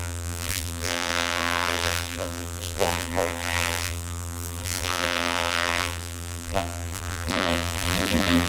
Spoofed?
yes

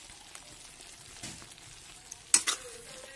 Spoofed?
no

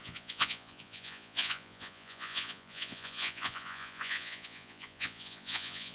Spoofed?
yes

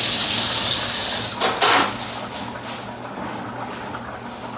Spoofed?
no